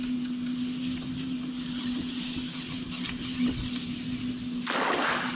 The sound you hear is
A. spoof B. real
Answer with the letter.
B